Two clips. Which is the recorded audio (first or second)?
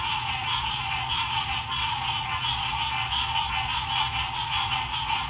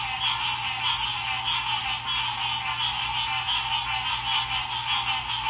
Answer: second